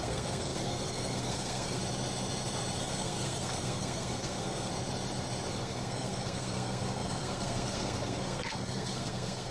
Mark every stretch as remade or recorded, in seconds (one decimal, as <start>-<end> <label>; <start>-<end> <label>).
0.0-1.8 remade; 1.8-2.8 recorded; 2.8-4.7 remade; 4.7-5.5 recorded; 5.5-9.5 remade